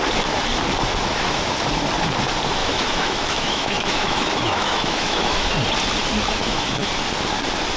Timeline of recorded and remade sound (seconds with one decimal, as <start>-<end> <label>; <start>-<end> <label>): 0.0-2.6 recorded; 2.6-5.5 remade; 5.5-6.4 recorded; 6.4-6.9 remade; 6.9-7.8 recorded